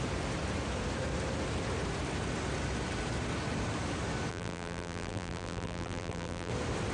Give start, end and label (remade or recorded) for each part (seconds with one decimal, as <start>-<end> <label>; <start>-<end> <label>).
0.0-4.3 recorded; 4.3-6.5 remade; 6.5-6.9 recorded